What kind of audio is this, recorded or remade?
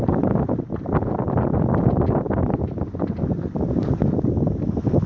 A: recorded